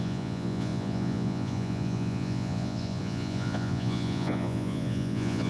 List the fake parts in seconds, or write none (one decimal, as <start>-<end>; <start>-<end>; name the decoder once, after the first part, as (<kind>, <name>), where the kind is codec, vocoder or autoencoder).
0.0-5.5 (vocoder, Vocos)